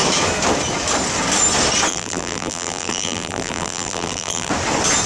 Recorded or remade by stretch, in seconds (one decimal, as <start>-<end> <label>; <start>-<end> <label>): 0.0-1.9 recorded; 1.9-4.5 remade; 4.5-5.1 recorded